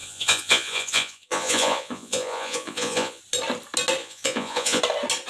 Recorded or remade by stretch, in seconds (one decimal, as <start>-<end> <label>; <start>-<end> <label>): 0.0-3.2 remade; 3.2-4.0 recorded; 4.0-4.8 remade; 4.8-5.3 recorded